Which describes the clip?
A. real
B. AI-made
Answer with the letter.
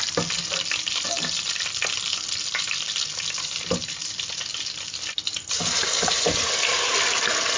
A